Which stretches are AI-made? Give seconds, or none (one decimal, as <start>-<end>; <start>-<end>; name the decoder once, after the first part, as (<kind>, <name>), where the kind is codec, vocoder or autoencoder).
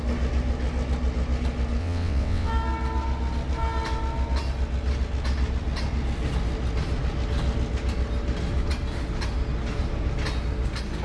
1.8-2.5 (vocoder, WaveNeXt)